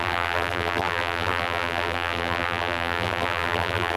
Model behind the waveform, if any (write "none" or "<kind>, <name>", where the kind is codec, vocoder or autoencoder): vocoder, BigVGAN v2